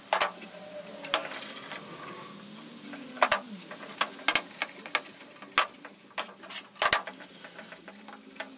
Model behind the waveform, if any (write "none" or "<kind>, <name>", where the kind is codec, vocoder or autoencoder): none